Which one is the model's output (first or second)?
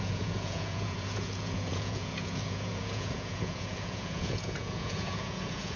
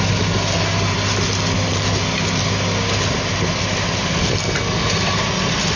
first